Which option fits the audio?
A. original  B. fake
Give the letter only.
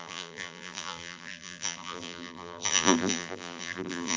B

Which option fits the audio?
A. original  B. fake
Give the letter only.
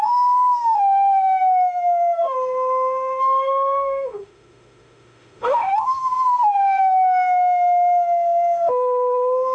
B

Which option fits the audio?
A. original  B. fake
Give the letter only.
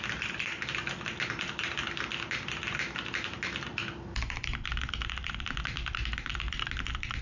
B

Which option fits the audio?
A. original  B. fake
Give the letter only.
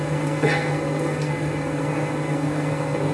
B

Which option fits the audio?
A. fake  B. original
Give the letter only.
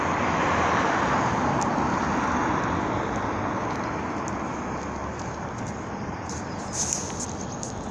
B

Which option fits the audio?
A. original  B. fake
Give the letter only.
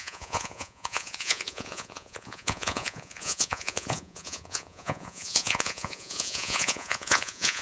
B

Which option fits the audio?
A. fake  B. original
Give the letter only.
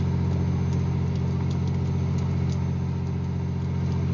B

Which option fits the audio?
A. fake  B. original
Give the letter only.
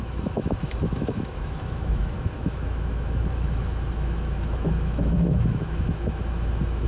A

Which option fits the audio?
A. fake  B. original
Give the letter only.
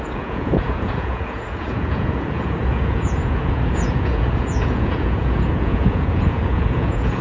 A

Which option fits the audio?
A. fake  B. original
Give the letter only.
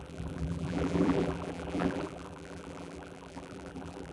A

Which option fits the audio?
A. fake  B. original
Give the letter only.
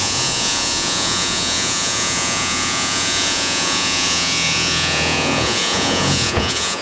A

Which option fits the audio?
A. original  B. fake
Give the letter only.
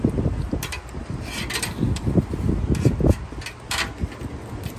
A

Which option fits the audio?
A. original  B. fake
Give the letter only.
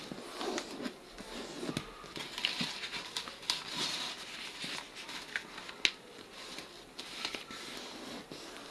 A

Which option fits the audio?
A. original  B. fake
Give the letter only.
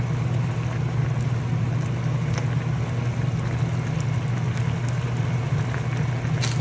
A